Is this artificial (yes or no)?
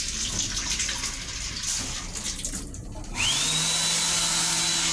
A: no